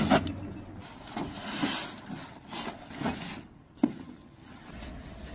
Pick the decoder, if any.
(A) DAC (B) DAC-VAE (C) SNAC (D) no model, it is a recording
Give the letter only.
D